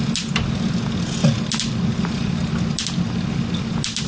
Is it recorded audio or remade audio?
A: recorded